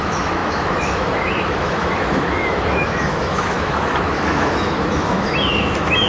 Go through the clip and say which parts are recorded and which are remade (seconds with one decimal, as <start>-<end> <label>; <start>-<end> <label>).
0.0-6.1 remade